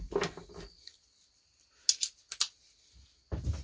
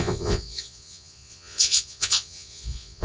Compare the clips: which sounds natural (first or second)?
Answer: first